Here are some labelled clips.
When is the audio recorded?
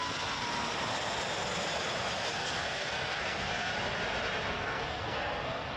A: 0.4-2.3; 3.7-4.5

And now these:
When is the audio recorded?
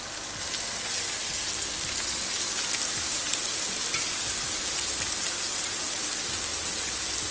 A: 0.0-7.3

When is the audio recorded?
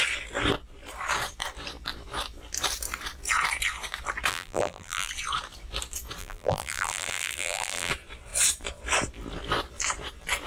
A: 0.0-4.3; 5.1-6.2; 7.9-10.5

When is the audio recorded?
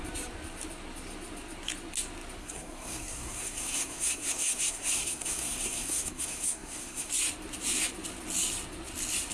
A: 0.0-2.4; 7.1-9.3